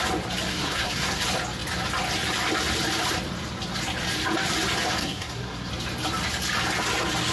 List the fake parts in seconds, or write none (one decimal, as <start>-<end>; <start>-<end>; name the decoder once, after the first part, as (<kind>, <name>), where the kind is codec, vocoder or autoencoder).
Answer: 0.5-1.2 (codec, SNAC); 5.0-5.7